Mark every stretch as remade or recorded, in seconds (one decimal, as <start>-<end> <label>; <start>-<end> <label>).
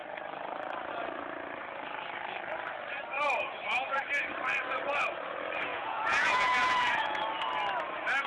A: 0.0-5.7 recorded; 5.7-7.2 remade; 7.2-8.3 recorded